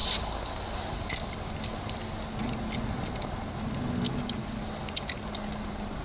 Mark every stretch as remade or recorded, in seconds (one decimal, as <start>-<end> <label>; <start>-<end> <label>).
0.0-6.0 recorded